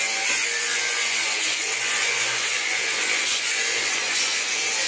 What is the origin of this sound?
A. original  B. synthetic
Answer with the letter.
B